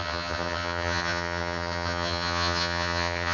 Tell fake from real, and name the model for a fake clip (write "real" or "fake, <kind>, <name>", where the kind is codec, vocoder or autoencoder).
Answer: fake, vocoder, HiFi-GAN